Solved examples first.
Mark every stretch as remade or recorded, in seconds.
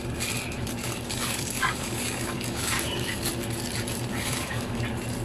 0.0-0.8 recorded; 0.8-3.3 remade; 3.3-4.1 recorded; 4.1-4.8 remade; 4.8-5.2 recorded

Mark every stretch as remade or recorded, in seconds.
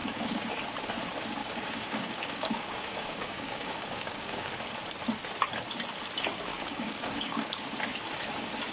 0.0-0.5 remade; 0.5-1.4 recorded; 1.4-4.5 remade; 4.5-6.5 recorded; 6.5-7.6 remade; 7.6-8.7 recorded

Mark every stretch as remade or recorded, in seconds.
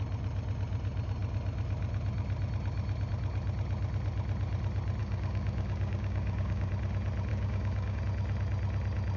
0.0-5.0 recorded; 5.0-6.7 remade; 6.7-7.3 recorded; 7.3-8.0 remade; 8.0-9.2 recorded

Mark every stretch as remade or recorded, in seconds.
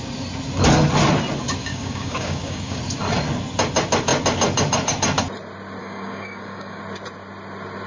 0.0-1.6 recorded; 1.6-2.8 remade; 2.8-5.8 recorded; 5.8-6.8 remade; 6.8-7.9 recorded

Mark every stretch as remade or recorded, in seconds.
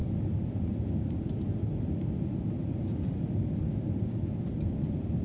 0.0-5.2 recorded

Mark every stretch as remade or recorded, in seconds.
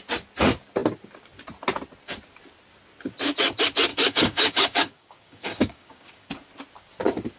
0.0-3.9 recorded; 3.9-6.3 remade; 6.3-7.4 recorded